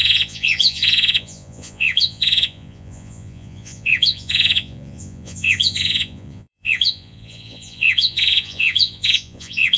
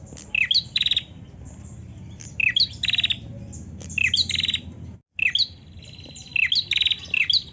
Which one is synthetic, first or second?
first